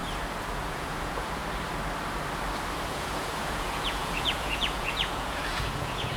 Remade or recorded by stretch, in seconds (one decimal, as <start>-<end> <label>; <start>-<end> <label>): 0.0-0.7 recorded; 0.7-1.4 remade; 1.4-2.9 recorded; 2.9-6.2 remade